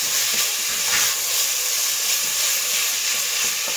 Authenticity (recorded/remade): recorded